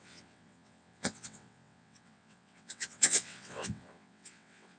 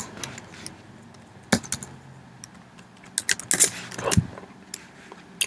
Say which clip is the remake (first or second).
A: first